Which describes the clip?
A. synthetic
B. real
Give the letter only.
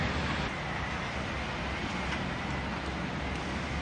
B